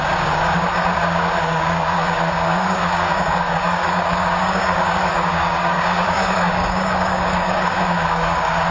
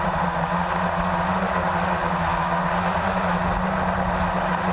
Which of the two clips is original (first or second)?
second